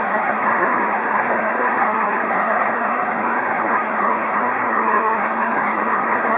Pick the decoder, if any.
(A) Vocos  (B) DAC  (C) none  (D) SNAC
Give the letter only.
D